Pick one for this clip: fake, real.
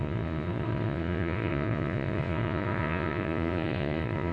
fake